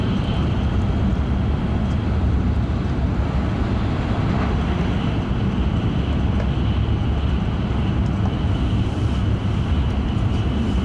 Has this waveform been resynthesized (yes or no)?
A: no